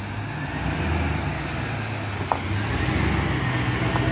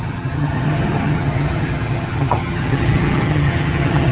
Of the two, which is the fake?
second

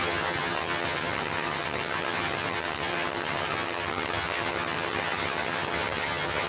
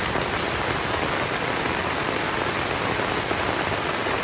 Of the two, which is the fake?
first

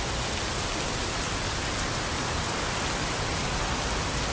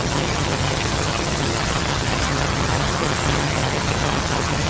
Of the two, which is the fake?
second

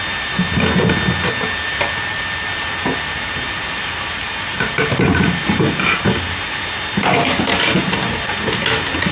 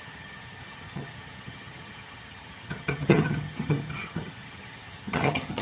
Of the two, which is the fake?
second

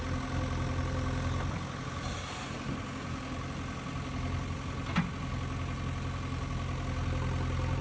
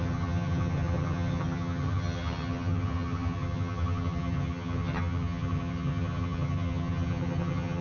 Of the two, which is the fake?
second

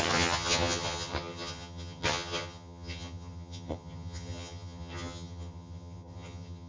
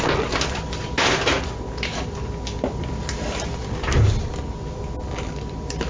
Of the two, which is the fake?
first